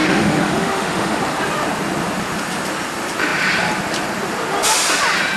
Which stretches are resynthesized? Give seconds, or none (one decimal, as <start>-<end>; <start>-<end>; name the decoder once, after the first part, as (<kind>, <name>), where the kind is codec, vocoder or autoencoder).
0.0-1.2 (autoencoder, DAC-VAE)